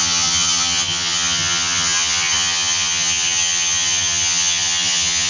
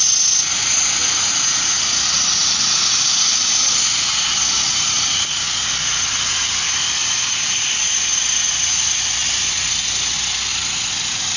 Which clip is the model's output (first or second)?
first